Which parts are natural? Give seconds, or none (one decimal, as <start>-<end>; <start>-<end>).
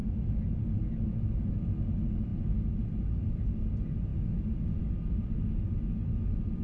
0.0-6.6